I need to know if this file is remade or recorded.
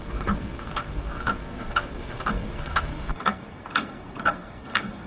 remade